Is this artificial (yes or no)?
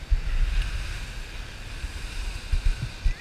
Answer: no